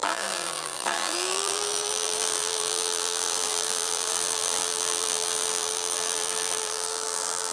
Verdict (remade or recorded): remade